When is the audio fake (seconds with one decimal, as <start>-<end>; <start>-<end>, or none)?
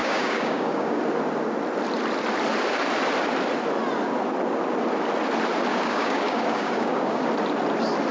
0.0-1.0; 5.7-7.3